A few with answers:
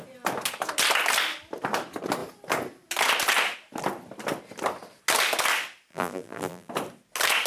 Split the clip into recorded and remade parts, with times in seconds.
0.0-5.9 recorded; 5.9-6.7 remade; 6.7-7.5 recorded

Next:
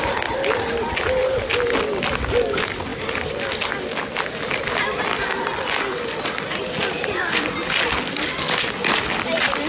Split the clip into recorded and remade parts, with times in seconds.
0.0-9.7 recorded

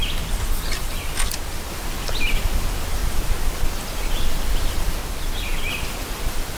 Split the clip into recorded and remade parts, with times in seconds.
0.0-1.7 recorded; 1.7-5.0 remade; 5.0-5.7 recorded; 5.7-6.6 remade

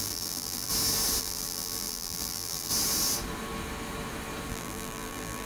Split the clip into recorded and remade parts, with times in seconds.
0.0-0.7 remade; 0.7-1.2 recorded; 1.2-2.7 remade; 2.7-4.5 recorded; 4.5-5.5 remade

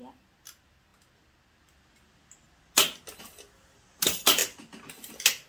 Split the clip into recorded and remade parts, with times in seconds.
0.0-5.5 recorded

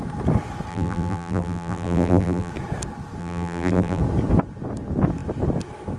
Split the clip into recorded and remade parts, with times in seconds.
0.0-0.7 recorded; 0.7-2.5 remade; 2.5-3.2 recorded; 3.2-4.0 remade; 4.0-6.0 recorded